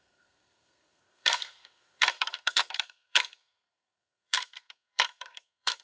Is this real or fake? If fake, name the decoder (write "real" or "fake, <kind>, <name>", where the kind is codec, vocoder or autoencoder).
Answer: fake, codec, SNAC